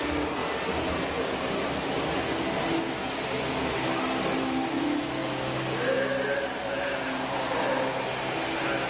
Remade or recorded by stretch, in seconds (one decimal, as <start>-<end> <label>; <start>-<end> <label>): 0.0-8.9 recorded